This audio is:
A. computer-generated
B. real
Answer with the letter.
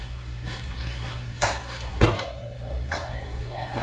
A